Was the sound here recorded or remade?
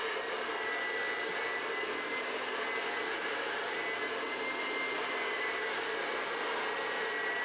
recorded